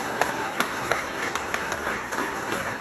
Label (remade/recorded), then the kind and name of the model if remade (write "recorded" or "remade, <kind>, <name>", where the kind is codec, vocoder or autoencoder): remade, codec, SNAC